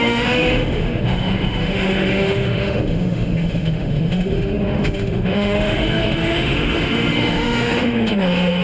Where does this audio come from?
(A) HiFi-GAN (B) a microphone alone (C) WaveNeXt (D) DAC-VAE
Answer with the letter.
D